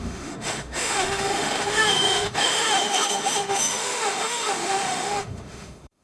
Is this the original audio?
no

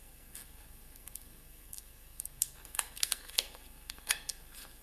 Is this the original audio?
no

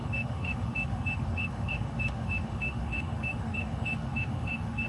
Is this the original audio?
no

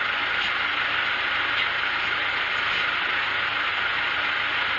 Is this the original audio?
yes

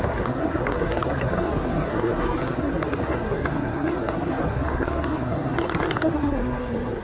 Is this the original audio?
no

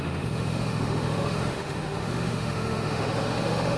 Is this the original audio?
no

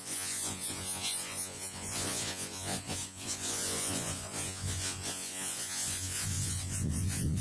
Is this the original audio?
no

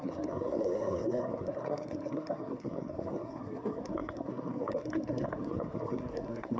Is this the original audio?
no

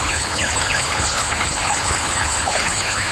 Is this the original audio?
no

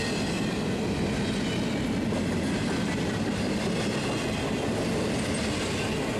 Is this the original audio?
yes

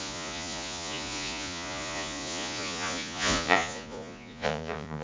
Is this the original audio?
no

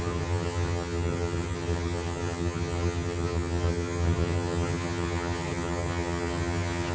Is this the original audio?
no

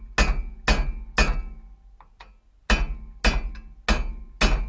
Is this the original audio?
yes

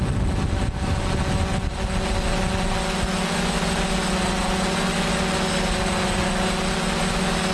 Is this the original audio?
yes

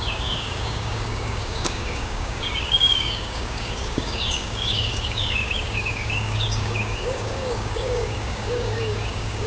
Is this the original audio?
no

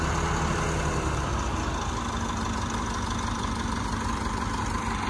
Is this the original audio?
yes